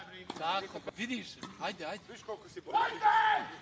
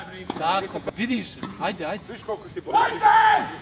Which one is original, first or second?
first